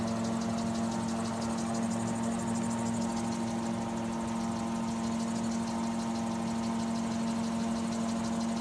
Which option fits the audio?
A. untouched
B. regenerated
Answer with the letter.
A